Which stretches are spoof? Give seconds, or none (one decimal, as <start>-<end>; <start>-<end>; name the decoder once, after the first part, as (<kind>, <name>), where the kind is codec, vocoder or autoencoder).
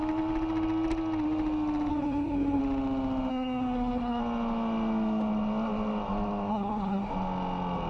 1.9-2.6 (codec, SNAC); 3.3-4.2; 6.5-7.1